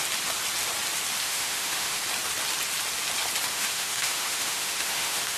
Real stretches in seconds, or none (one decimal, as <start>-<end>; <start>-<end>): 0.0-1.2; 2.0-3.5